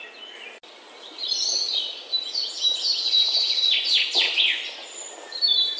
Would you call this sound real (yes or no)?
yes